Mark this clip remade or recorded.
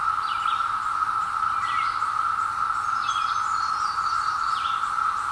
recorded